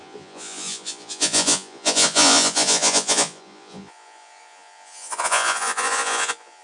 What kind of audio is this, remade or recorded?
remade